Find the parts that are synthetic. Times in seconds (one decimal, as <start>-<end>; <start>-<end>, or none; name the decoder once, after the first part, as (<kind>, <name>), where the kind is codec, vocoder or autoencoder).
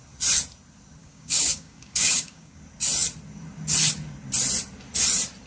1.0-2.6 (codec, DAC)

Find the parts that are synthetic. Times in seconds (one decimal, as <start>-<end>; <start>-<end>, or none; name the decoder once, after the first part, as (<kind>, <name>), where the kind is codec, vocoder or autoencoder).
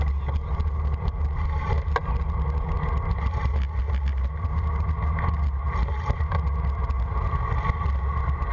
none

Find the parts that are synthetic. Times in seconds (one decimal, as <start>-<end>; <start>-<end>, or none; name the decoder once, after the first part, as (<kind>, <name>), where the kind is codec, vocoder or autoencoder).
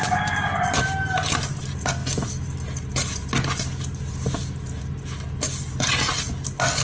none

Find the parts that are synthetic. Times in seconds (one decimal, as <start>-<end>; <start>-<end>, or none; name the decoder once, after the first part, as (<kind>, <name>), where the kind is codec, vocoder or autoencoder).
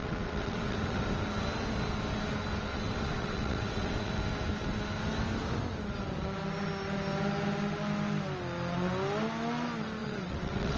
0.0-1.0 (vocoder, WaveNeXt); 2.7-4.1; 10.0-10.8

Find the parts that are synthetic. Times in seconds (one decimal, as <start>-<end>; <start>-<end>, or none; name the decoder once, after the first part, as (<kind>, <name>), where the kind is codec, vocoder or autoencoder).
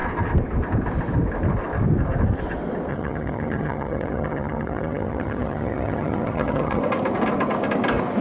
2.9-6.8 (vocoder, HiFi-GAN)